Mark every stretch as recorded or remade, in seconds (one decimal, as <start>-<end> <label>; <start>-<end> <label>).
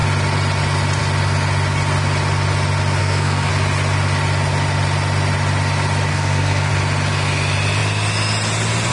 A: 0.0-3.0 recorded; 3.0-3.5 remade; 3.5-6.1 recorded; 6.1-6.7 remade; 6.7-8.9 recorded